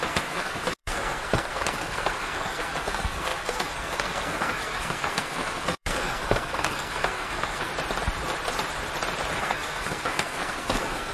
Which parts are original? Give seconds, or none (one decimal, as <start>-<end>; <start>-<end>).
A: 7.7-9.4